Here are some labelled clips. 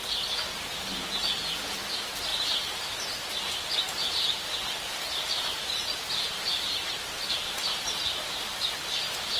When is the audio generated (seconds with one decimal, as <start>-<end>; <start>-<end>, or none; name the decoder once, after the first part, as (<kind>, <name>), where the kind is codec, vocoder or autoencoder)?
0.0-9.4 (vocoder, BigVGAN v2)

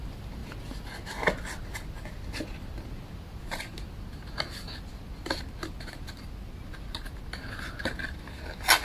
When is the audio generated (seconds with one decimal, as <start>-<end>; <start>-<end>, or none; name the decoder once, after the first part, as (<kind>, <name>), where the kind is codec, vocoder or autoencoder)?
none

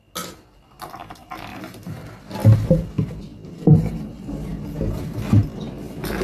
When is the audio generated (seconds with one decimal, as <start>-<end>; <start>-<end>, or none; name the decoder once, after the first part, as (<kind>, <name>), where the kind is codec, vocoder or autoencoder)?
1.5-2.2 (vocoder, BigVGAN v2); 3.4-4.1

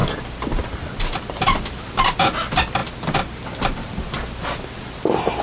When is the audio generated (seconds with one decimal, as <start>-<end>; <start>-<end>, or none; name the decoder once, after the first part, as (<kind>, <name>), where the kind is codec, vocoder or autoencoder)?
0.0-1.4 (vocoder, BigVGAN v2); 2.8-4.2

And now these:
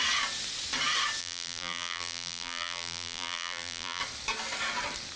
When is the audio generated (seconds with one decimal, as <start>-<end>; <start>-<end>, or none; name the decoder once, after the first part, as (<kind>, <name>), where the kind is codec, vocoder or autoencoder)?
1.2-4.0 (vocoder, BigVGAN v2)

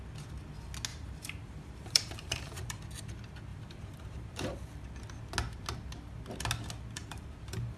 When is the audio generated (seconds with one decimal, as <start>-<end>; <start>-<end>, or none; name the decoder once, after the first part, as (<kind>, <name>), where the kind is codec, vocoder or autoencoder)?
0.9-2.8 (vocoder, BigVGAN v2); 3.5-4.5; 7.0-7.8